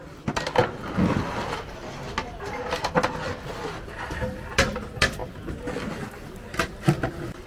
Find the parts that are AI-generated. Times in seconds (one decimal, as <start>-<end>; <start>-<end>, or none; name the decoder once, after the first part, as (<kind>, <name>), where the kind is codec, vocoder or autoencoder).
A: none